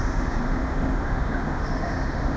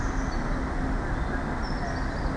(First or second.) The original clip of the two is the second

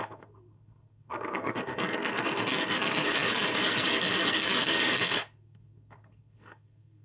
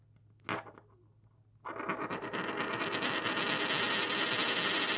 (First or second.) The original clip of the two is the second